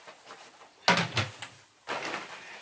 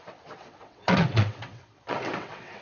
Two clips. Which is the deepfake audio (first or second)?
second